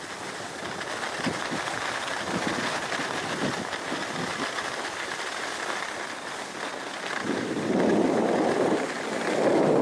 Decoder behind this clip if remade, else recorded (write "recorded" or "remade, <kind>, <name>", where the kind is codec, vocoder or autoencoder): recorded